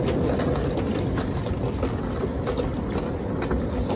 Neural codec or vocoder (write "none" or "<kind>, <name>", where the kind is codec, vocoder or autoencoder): none